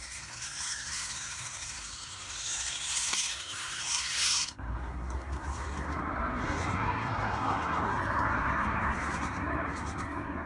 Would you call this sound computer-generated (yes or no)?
yes